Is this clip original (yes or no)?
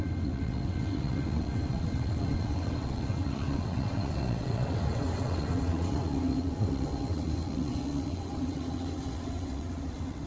no